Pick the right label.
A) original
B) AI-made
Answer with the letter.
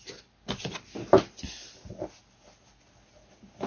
A